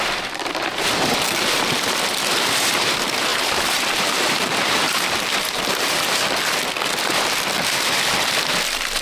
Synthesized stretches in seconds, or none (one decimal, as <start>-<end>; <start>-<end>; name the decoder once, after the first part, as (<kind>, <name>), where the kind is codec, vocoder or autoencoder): 3.3-6.2 (vocoder, BigVGAN v2)